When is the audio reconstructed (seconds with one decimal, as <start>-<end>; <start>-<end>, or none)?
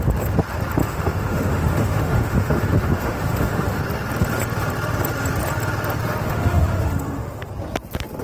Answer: 0.8-3.8; 6.2-7.5